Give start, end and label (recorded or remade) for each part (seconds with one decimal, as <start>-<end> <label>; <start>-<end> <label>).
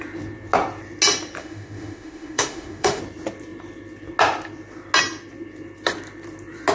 0.0-1.4 recorded; 1.4-3.0 remade; 3.0-6.7 recorded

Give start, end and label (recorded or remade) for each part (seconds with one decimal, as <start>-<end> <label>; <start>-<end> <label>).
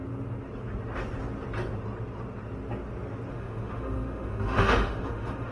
0.0-3.3 recorded; 3.3-5.5 remade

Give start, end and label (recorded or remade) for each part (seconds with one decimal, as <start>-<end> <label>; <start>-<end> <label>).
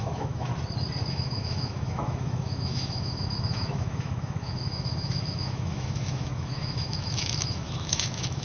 0.0-0.5 remade; 0.5-1.1 recorded; 1.1-8.4 remade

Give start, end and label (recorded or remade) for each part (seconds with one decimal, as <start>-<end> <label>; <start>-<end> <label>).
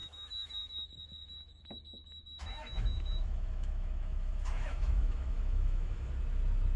0.0-1.6 remade; 1.6-2.0 recorded; 2.0-6.1 remade; 6.1-6.8 recorded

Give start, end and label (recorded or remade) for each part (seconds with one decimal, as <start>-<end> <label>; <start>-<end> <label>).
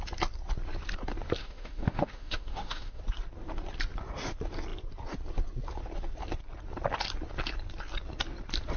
0.0-1.4 recorded; 1.4-3.0 remade; 3.0-8.8 recorded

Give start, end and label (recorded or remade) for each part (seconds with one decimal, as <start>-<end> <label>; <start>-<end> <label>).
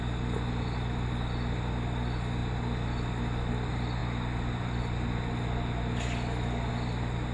0.0-7.3 recorded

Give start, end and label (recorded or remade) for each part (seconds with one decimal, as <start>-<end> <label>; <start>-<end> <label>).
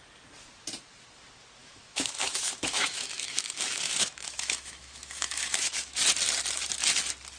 0.0-1.6 recorded; 1.6-6.0 remade; 6.0-7.4 recorded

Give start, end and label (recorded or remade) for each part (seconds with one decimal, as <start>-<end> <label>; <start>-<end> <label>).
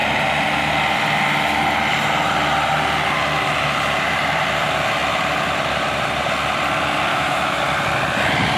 0.0-7.1 recorded; 7.1-7.6 remade; 7.6-8.6 recorded